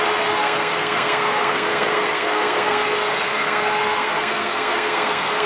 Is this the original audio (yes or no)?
no